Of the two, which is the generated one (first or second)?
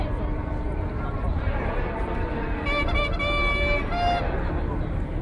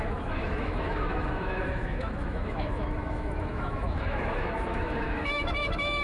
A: second